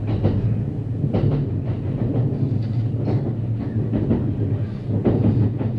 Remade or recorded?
recorded